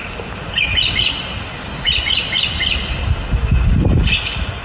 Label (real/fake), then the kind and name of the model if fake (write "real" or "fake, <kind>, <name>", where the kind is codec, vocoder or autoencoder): real